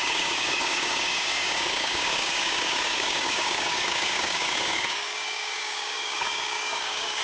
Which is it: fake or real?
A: fake